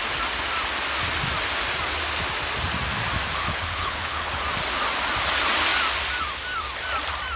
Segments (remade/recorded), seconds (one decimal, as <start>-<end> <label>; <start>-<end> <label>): 0.0-3.4 recorded; 3.4-4.4 remade; 4.4-7.4 recorded